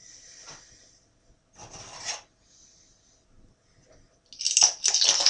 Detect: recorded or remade recorded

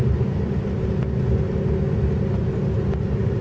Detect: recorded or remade recorded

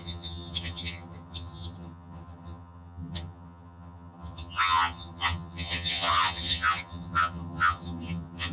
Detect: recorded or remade remade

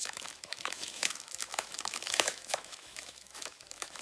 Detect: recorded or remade remade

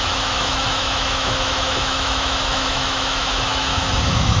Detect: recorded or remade remade